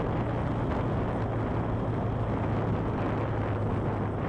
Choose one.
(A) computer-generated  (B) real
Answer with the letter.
B